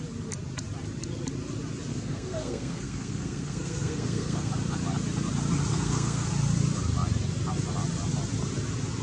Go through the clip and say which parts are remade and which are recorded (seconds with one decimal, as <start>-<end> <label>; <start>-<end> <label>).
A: 0.0-1.9 recorded; 1.9-4.5 remade; 4.5-5.7 recorded; 5.7-6.3 remade; 6.3-9.0 recorded